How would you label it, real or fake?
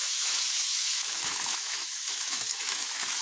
fake